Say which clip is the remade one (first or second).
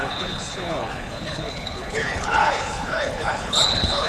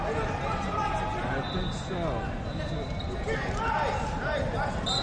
first